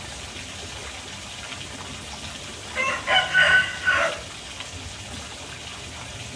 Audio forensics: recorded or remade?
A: recorded